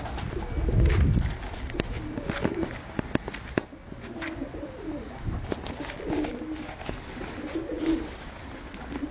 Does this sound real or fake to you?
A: real